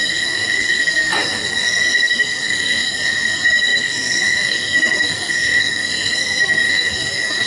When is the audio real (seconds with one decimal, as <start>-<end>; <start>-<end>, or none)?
none